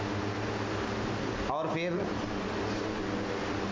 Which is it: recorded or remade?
recorded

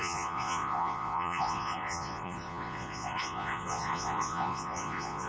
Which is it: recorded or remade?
remade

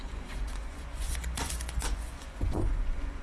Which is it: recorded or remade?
remade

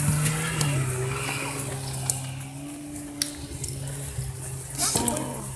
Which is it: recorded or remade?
recorded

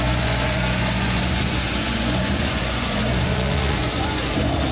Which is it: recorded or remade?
remade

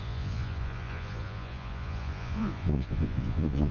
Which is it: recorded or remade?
remade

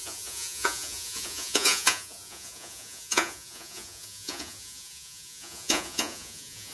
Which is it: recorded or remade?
remade